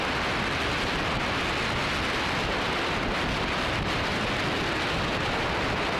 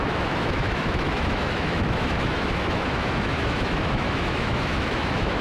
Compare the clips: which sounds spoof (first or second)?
second